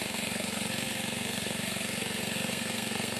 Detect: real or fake fake